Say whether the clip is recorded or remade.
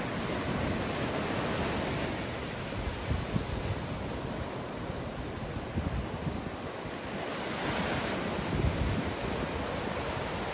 recorded